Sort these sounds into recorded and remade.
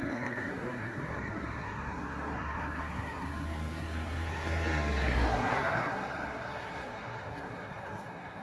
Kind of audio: remade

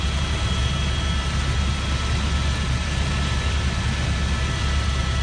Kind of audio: recorded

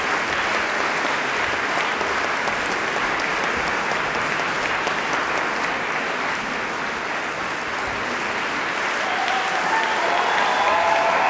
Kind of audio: recorded